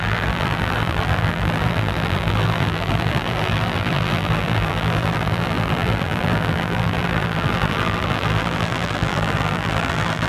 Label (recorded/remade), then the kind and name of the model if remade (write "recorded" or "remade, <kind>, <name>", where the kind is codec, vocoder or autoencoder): remade, vocoder, BigVGAN v2